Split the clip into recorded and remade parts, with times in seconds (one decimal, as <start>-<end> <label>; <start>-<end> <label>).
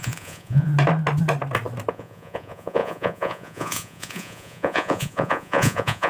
0.0-0.7 remade; 0.7-1.9 recorded; 1.9-6.1 remade